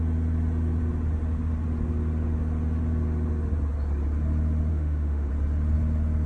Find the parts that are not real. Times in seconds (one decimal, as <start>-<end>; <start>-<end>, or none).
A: 4.7-5.3